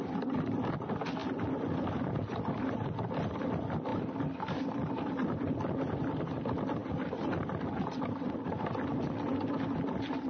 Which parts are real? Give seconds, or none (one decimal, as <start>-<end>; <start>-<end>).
0.0-10.3